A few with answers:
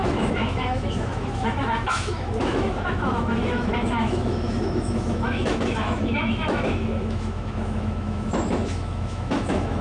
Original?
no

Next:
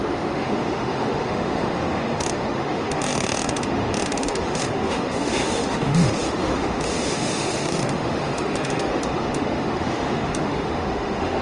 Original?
no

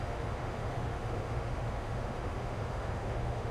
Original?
no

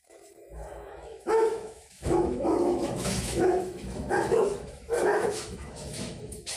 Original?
no